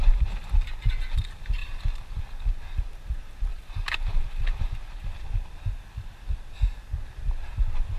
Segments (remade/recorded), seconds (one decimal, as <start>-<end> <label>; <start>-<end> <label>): 0.0-3.5 recorded; 3.5-5.2 remade; 5.2-8.0 recorded